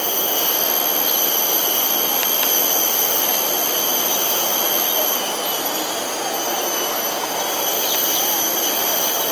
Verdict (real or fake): real